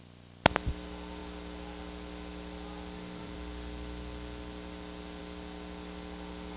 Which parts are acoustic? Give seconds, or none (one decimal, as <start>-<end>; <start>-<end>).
0.0-6.6